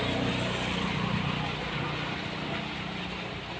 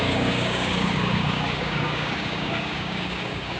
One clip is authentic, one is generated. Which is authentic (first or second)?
first